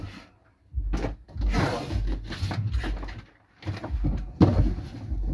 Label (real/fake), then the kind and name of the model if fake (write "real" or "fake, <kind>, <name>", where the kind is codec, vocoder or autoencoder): real